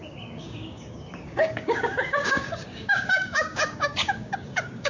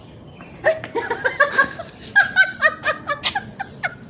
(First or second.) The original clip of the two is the second